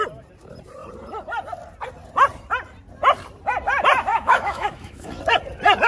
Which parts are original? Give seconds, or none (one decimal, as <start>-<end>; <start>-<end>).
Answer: 0.0-4.1; 5.2-5.9